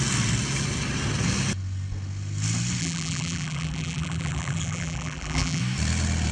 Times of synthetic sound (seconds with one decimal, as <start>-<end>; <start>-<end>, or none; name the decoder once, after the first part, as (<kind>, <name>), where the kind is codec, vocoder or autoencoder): 2.8-5.6 (vocoder, BigVGAN v2)